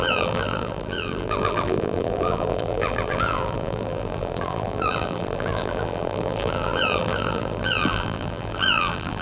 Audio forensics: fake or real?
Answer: fake